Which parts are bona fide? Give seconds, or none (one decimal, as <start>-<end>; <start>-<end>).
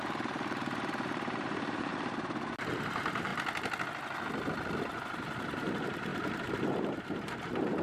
1.9-2.7; 3.3-4.8; 6.1-6.7